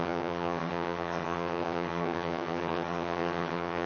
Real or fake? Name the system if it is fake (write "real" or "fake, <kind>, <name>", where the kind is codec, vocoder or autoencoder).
fake, vocoder, HiFi-GAN